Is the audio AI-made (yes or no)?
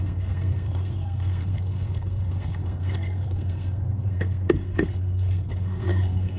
yes